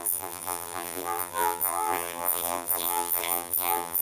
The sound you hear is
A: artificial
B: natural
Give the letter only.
A